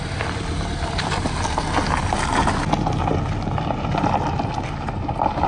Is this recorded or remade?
recorded